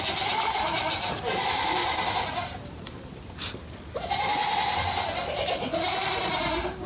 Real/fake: real